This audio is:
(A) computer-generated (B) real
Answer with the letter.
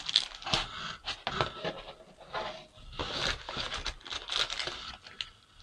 B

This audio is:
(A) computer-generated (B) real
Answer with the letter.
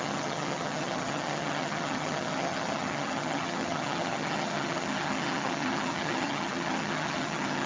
A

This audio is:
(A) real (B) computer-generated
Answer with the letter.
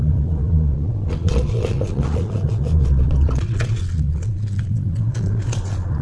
B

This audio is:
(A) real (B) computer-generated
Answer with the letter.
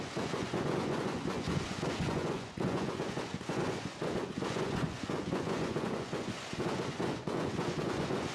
B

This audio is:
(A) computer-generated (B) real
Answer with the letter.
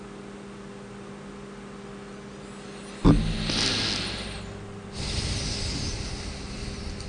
B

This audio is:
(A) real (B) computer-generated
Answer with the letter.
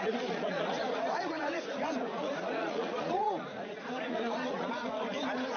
B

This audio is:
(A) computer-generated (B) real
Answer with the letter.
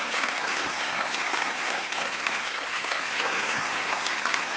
A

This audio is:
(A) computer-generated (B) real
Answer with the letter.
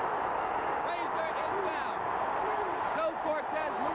B